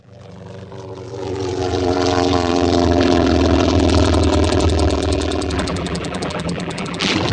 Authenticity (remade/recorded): remade